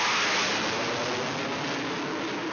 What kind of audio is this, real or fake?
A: real